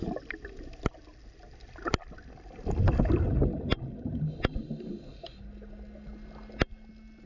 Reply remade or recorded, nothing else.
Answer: recorded